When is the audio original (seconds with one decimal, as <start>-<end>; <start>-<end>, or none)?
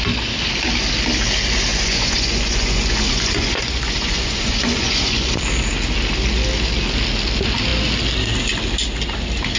0.0-1.7; 5.3-9.6